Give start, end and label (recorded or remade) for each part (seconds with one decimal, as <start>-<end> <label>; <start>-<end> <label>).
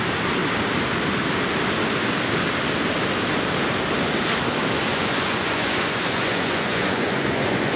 0.0-4.9 recorded; 4.9-7.8 remade